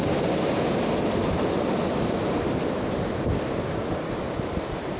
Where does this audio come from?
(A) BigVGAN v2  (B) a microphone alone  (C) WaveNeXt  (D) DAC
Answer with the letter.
B